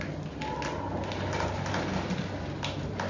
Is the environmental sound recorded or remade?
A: recorded